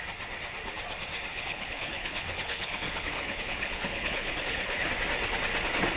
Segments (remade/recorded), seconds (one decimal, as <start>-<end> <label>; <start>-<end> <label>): 0.0-1.3 recorded; 1.3-4.9 remade; 4.9-6.0 recorded